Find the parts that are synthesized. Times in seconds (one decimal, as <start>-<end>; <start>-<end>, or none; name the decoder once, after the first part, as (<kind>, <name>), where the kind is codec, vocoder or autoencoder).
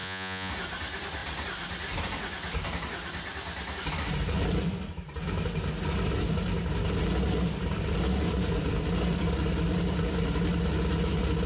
0.0-0.5 (vocoder, Vocos)